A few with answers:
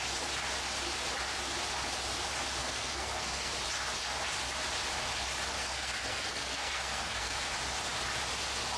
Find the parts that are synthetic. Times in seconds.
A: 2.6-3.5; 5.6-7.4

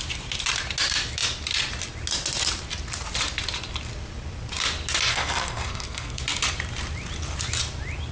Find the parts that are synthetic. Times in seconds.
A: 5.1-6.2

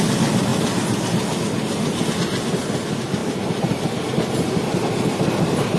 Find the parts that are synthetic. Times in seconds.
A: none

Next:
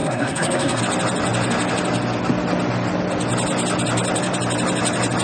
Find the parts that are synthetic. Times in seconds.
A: 0.0-0.8

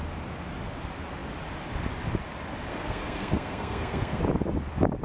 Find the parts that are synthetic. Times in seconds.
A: 2.7-4.2